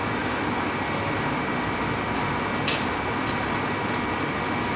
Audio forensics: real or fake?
real